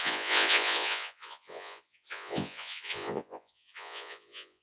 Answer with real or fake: fake